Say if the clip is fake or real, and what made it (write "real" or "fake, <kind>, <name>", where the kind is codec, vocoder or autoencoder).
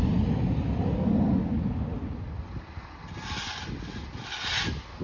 real